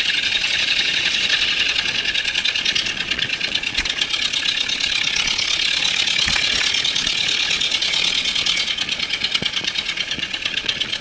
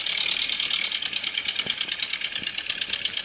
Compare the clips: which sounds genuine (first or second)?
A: second